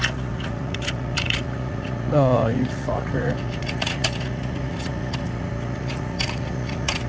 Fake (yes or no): yes